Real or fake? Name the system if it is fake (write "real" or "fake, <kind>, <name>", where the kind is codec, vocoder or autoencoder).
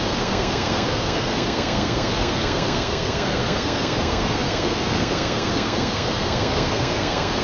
fake, codec, SNAC